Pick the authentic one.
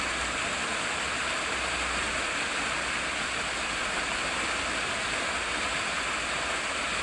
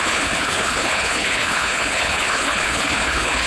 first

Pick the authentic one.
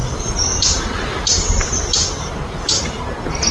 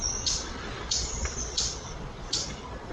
first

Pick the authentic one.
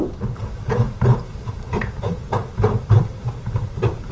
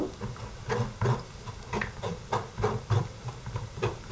second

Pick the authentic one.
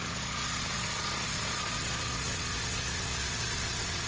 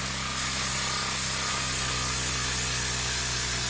second